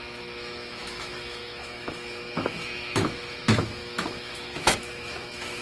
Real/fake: fake